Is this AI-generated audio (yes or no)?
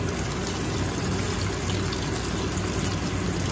no